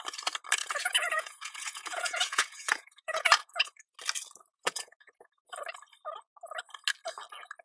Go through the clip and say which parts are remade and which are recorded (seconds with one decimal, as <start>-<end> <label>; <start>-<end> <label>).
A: 0.0-0.6 recorded; 0.6-4.0 remade; 4.0-4.5 recorded; 4.5-5.5 remade; 5.5-7.6 recorded